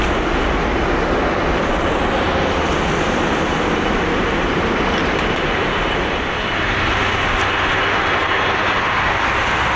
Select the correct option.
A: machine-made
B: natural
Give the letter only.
B